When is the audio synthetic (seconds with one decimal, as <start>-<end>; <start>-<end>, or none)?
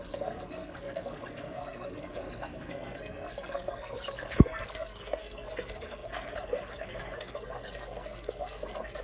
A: 0.0-9.0